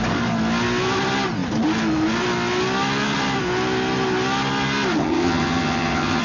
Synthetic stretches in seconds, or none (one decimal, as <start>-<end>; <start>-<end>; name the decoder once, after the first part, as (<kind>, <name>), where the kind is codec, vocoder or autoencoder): 5.0-6.2 (vocoder, HiFi-GAN)